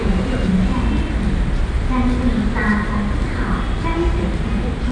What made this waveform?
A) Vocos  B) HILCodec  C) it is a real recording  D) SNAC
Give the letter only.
C